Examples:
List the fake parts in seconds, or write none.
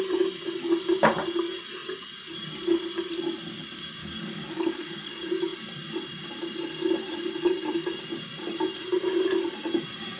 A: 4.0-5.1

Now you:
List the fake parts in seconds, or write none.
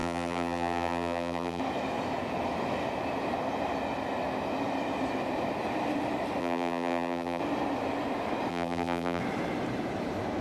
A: 0.0-1.6; 6.4-7.4; 8.5-9.2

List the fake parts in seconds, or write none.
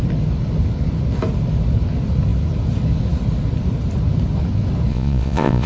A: 4.9-5.7